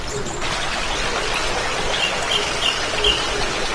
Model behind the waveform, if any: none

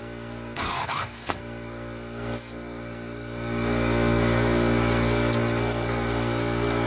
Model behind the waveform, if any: codec, SNAC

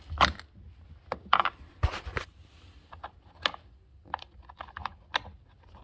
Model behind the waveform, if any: none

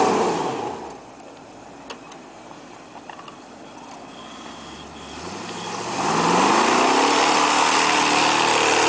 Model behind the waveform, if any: none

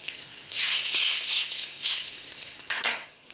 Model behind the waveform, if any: codec, SNAC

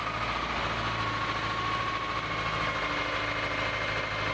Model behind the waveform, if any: none